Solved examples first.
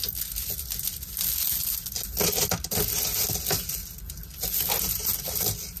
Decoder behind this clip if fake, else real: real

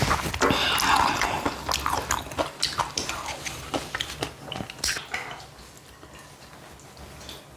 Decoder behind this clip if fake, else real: real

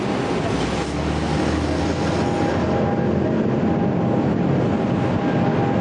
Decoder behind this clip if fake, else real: real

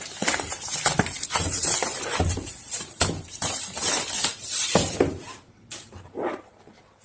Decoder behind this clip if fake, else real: fake, vocoder, BigVGAN v2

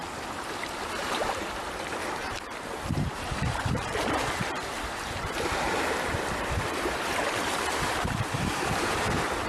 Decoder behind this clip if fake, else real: fake, vocoder, BigVGAN v2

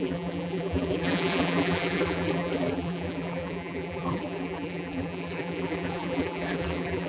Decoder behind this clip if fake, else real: fake, vocoder, BigVGAN v2